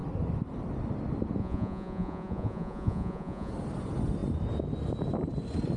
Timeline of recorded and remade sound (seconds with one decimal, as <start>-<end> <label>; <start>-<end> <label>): 0.0-1.4 recorded; 1.4-3.5 remade; 3.5-5.8 recorded